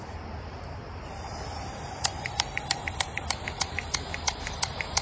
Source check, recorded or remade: remade